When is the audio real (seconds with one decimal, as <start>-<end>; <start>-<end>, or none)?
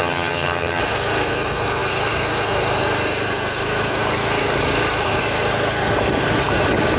0.8-7.0